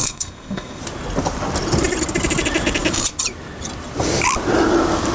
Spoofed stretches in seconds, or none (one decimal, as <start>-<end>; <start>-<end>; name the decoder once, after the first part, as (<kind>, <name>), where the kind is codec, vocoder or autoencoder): 0.0-0.8 (codec, SNAC)